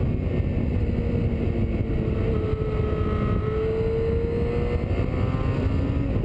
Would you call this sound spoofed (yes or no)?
no